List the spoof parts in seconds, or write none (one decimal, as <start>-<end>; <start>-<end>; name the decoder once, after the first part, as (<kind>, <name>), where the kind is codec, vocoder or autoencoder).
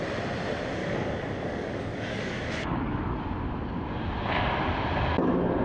0.8-3.2 (codec, DAC)